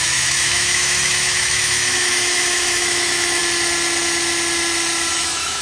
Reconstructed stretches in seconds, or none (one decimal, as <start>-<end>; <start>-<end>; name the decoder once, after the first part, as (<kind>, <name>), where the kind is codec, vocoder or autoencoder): 0.0-3.4 (autoencoder, DAC-VAE); 5.1-5.6

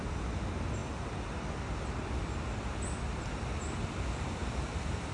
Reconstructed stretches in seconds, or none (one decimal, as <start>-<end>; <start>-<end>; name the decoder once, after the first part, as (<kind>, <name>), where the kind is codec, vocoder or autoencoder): 4.4-5.1 (vocoder, BigVGAN v2)

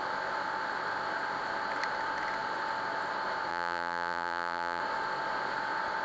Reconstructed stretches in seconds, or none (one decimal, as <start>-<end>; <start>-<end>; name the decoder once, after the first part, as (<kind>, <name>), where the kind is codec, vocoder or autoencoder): 3.5-4.8 (vocoder, BigVGAN v2)

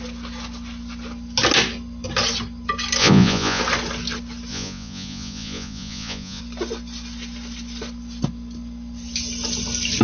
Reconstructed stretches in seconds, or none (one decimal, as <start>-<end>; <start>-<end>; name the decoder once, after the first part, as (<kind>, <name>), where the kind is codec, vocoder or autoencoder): 3.0-3.6 (vocoder, Vocos); 4.5-6.4